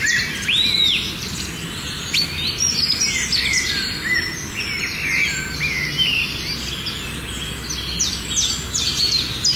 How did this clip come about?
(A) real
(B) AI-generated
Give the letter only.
A